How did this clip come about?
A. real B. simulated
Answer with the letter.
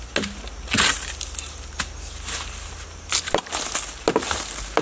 A